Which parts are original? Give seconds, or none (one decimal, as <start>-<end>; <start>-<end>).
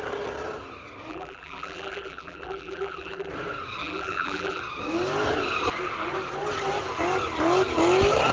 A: 0.0-1.1; 3.3-3.8; 4.6-8.3